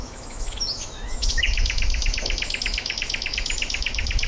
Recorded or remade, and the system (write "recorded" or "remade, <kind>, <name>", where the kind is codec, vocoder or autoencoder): remade, autoencoder, DAC-VAE